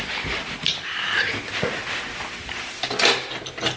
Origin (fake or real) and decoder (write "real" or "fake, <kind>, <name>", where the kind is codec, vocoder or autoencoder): real